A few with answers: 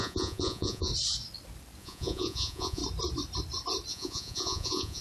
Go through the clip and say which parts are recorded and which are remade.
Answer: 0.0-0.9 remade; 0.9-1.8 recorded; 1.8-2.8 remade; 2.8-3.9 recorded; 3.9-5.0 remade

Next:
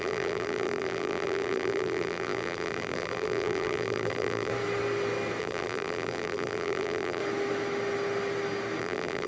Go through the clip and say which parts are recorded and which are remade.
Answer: 0.0-4.5 remade; 4.5-5.4 recorded; 5.4-7.2 remade; 7.2-8.8 recorded; 8.8-9.3 remade

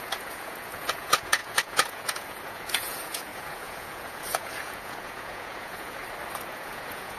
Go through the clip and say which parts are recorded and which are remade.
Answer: 0.0-6.0 remade; 6.0-6.5 recorded; 6.5-7.2 remade

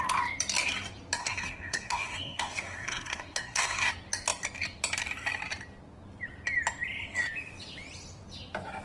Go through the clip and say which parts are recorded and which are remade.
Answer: 0.0-1.2 recorded; 1.2-3.9 remade; 3.9-8.8 recorded

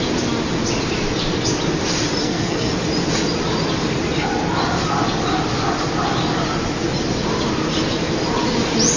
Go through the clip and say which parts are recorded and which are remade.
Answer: 0.0-2.2 recorded; 2.2-2.7 remade; 2.7-9.0 recorded